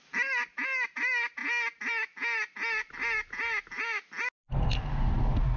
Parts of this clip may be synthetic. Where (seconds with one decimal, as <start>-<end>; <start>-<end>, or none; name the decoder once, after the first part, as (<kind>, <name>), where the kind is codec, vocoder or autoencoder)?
none